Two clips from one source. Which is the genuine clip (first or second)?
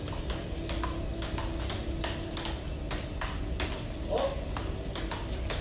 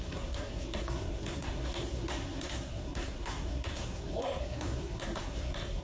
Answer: first